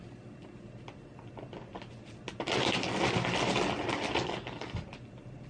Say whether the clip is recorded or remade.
recorded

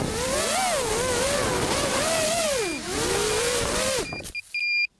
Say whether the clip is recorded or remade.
recorded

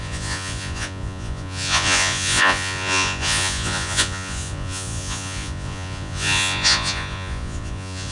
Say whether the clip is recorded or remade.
remade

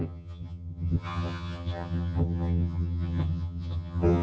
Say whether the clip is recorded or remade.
remade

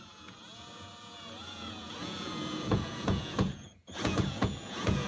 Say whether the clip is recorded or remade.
remade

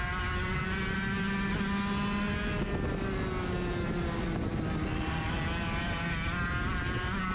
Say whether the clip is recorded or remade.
recorded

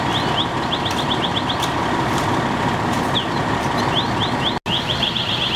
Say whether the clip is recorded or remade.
recorded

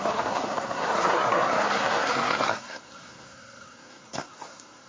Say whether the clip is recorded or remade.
remade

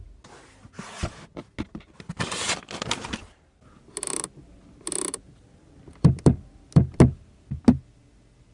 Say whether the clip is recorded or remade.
recorded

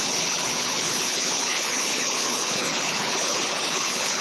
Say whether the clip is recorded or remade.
remade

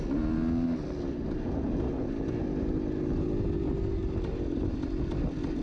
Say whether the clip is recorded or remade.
recorded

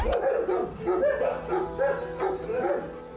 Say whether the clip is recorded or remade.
recorded